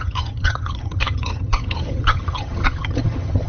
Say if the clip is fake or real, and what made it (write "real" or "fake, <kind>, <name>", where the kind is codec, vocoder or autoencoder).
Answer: fake, vocoder, HiFi-GAN